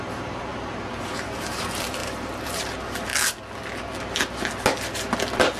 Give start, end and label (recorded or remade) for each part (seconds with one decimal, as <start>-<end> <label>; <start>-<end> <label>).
0.0-3.1 remade; 3.1-5.6 recorded